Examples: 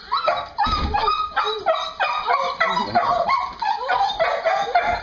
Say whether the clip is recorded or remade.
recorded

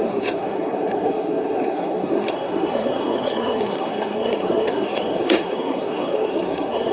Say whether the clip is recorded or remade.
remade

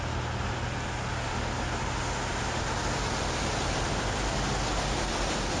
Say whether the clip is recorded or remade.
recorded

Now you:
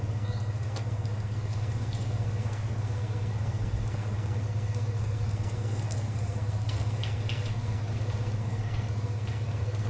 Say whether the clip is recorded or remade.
remade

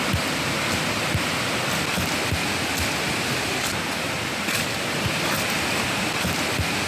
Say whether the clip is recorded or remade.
recorded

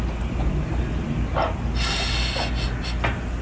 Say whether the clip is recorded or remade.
recorded